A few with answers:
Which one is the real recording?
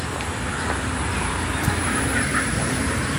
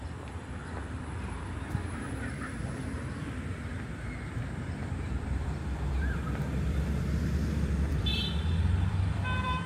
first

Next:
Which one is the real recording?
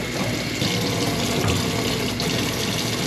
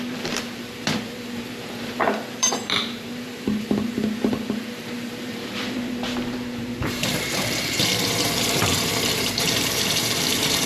first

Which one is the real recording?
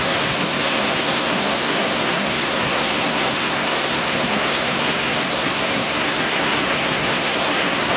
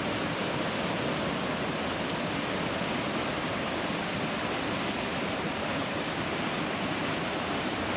second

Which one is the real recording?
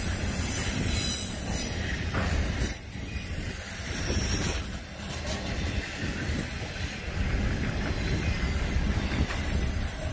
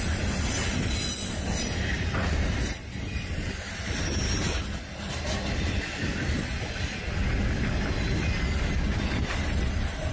second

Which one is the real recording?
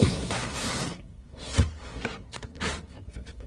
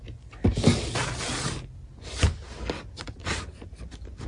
second